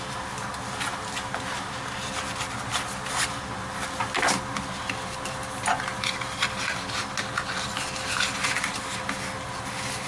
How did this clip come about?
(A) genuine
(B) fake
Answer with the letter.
A